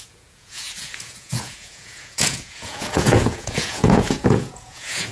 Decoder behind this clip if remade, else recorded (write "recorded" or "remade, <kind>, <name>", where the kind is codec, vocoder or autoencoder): remade, vocoder, Vocos